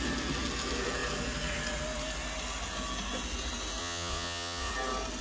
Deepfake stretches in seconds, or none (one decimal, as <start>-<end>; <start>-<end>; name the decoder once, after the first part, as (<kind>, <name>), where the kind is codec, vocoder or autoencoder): 3.8-4.7 (vocoder, Vocos)